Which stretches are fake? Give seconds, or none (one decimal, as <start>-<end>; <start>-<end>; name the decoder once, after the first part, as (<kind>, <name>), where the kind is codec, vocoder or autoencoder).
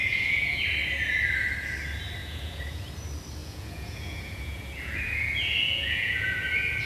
0.0-0.6 (vocoder, Vocos); 2.2-2.8; 3.4-6.9